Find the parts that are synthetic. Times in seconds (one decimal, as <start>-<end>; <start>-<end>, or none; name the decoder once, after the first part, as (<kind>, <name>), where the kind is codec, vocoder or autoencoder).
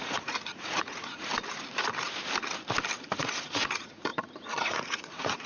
0.0-1.3 (vocoder, Vocos); 3.2-4.1; 4.6-5.5